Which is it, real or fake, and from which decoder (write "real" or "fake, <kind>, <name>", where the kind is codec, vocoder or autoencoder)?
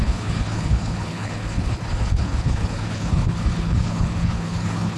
fake, codec, HILCodec